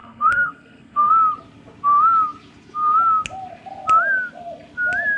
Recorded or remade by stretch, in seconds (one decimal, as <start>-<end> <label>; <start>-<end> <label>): 0.0-1.1 remade; 1.1-5.2 recorded